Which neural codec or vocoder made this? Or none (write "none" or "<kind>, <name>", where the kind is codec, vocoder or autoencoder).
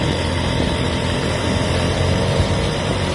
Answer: vocoder, BigVGAN v2